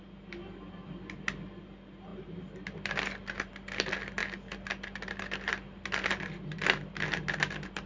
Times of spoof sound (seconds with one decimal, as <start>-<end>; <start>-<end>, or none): 4.2-5.5